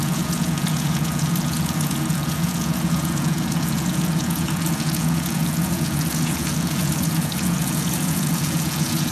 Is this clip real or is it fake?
fake